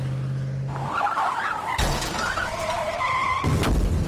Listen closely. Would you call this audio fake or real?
real